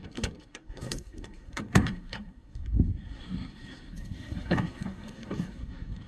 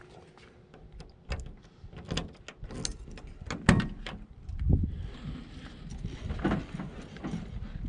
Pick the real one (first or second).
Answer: second